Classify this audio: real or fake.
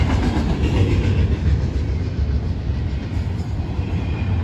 real